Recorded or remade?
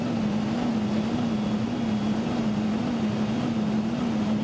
recorded